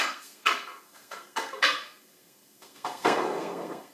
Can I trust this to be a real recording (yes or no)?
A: no